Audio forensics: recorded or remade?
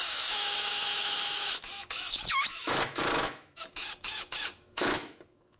remade